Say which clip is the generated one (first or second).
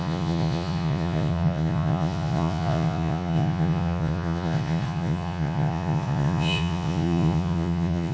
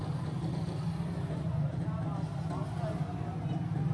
first